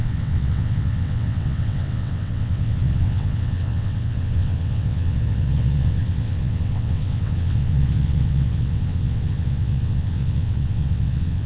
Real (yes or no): no